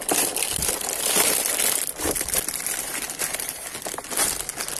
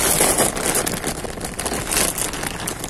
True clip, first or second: second